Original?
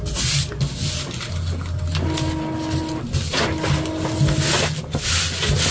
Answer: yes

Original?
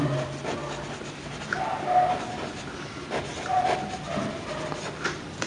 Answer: yes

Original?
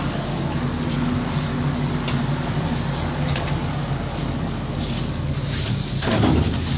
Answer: no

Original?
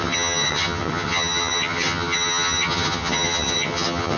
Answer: no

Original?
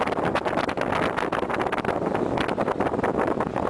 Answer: yes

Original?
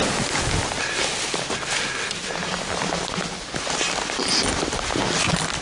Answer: yes